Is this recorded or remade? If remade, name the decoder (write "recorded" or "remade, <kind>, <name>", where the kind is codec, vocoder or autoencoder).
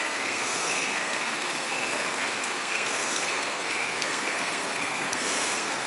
remade, codec, SNAC